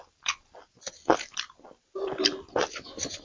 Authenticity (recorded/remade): recorded